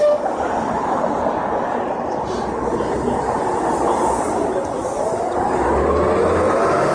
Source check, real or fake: real